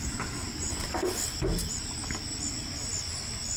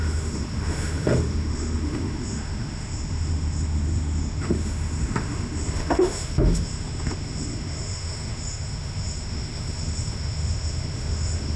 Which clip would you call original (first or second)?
first